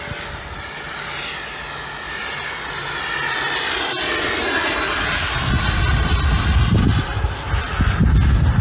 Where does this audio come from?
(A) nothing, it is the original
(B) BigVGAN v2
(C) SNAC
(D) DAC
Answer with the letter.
A